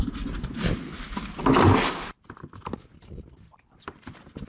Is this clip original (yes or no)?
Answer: yes